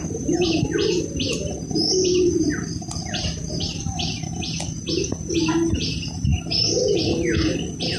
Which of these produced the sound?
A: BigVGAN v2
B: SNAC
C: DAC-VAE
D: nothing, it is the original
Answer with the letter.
A